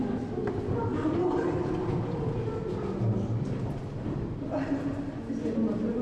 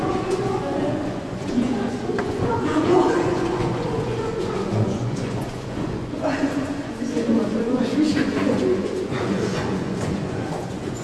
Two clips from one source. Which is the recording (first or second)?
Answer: first